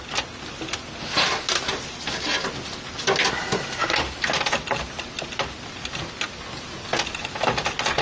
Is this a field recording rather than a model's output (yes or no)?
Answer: yes